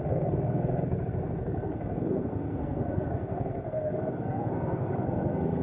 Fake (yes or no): yes